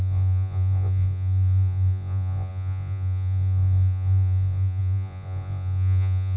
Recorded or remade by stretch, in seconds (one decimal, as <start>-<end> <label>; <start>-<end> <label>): 0.0-6.4 remade